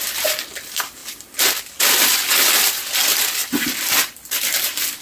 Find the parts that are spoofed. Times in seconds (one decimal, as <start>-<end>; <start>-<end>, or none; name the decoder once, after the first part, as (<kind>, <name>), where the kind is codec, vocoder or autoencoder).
0.0-1.0 (vocoder, BigVGAN v2); 1.6-3.4; 4.3-5.0